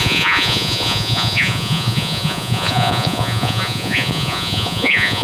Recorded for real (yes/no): no